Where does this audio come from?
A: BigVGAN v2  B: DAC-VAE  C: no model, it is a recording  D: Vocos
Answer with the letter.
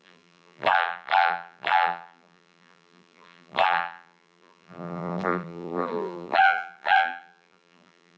A